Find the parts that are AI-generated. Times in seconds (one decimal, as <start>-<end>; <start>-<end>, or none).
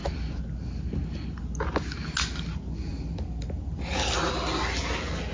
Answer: 2.9-4.3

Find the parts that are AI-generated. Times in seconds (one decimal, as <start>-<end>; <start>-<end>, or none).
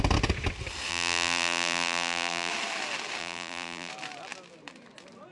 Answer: 0.9-2.5; 3.2-3.9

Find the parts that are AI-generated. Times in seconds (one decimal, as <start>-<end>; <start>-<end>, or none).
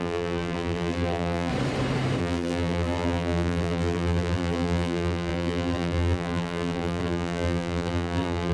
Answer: 0.0-1.5; 2.2-8.5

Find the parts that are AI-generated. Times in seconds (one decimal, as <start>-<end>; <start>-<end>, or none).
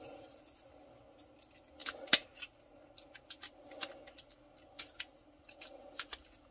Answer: 0.0-1.8; 3.5-6.5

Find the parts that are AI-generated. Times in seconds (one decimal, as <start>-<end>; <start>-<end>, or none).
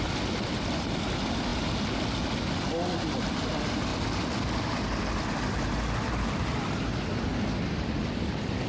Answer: none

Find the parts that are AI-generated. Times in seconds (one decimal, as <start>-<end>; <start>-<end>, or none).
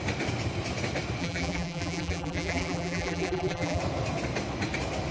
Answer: 1.2-3.8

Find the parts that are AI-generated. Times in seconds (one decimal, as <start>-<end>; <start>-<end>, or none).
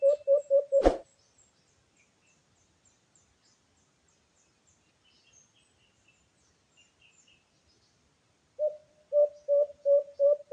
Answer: 0.8-1.4